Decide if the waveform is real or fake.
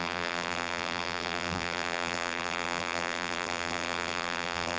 fake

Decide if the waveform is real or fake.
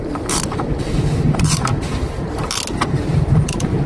fake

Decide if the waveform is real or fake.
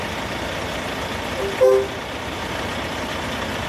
real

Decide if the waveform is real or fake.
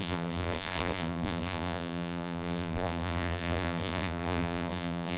fake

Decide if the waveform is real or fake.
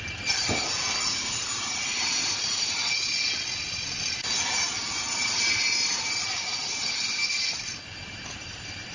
real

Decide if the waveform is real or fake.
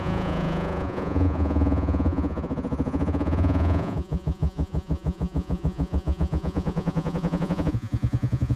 fake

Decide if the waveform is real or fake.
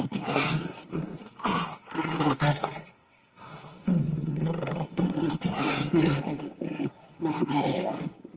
fake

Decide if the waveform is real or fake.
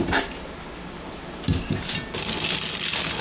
real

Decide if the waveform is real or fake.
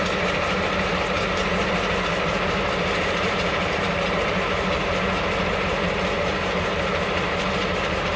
fake